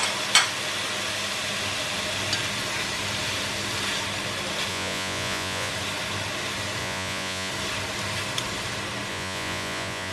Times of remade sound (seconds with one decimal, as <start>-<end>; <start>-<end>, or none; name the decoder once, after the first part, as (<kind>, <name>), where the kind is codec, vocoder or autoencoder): 4.7-5.7 (vocoder, Vocos); 6.8-7.5; 9.1-10.1